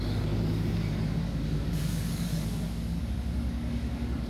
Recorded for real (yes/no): no